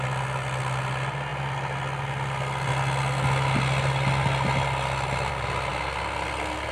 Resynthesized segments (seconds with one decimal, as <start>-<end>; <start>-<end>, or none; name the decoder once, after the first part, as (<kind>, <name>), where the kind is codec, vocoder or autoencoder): none